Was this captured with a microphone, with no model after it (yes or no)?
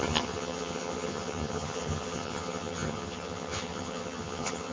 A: no